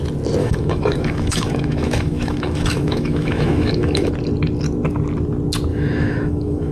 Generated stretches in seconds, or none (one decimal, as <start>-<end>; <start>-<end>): 0.4-4.1; 5.7-6.7